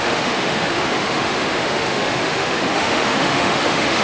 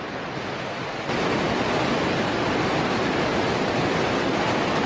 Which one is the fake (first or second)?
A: first